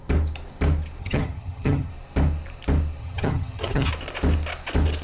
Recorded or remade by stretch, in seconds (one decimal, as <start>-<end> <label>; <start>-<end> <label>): 0.0-1.0 recorded; 1.0-1.9 remade; 1.9-3.0 recorded; 3.0-3.9 remade; 3.9-5.0 recorded